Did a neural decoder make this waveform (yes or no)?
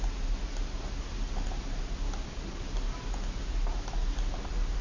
no